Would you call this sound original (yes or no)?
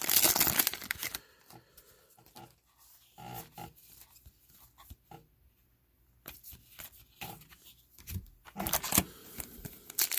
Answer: yes